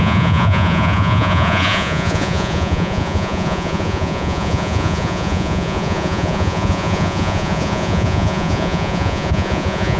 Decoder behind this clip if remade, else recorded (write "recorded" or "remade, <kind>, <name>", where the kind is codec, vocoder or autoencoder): remade, vocoder, Vocos